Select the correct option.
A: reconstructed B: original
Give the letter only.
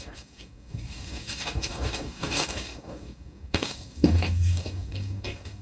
A